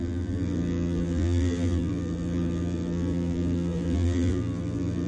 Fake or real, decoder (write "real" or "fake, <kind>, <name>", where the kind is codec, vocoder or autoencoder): fake, vocoder, BigVGAN v2